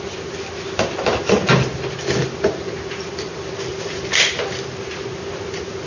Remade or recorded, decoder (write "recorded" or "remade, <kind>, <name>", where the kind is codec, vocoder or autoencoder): recorded